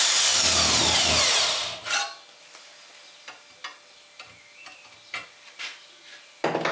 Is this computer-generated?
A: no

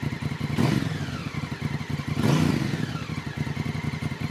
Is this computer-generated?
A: no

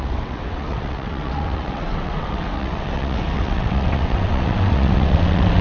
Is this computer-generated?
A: yes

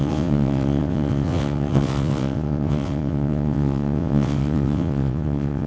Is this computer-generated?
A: yes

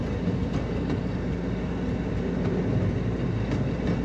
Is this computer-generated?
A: no